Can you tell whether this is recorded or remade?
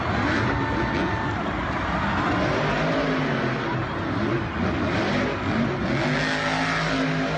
recorded